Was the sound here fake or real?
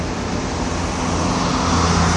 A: real